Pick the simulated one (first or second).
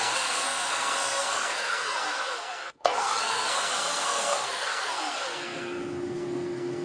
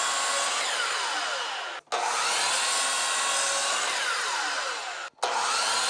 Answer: first